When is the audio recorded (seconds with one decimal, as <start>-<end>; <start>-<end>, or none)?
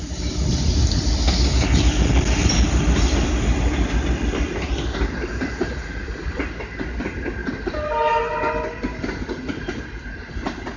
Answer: 0.0-10.8